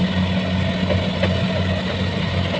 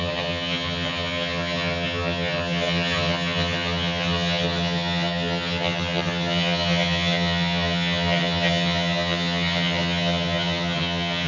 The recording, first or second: first